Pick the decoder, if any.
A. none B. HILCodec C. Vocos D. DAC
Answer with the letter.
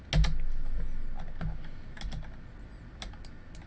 A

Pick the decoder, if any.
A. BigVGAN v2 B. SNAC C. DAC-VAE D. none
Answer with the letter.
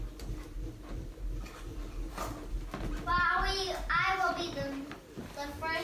D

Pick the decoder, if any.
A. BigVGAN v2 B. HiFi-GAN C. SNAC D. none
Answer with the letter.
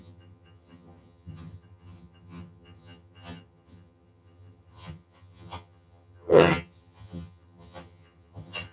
B